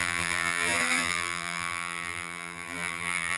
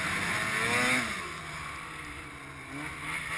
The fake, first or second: first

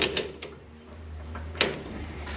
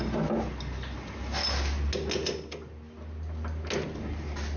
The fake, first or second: first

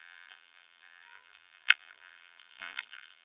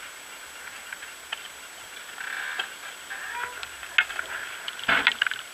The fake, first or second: first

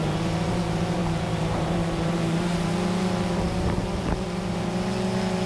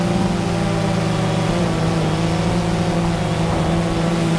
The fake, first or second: first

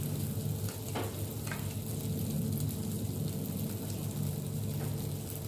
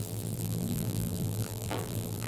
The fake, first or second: second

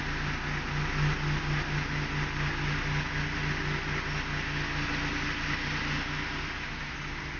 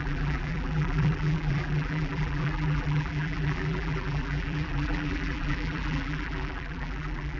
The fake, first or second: second